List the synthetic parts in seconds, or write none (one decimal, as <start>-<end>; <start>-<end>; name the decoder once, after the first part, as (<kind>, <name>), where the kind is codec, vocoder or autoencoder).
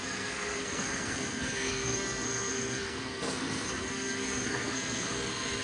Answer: 0.0-5.6 (codec, SNAC)